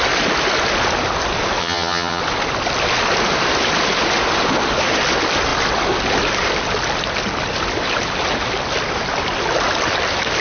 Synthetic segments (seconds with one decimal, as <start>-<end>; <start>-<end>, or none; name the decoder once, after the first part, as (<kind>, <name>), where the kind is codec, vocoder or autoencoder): 1.6-2.2 (vocoder, HiFi-GAN)